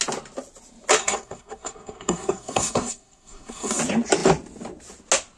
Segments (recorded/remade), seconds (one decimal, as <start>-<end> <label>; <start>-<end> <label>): 0.0-1.0 recorded; 1.0-3.8 remade; 3.8-5.4 recorded